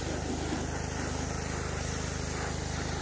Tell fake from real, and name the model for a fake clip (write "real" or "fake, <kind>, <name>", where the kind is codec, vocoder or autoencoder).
real